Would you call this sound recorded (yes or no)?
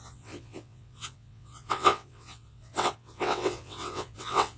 no